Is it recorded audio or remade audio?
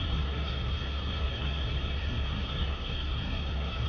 remade